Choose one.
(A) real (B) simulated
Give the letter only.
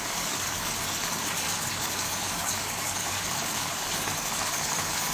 B